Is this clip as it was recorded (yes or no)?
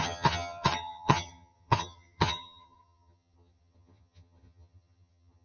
no